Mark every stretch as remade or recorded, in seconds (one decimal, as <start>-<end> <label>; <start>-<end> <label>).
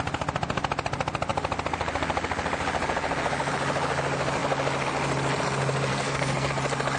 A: 0.0-5.9 recorded; 5.9-6.5 remade; 6.5-7.0 recorded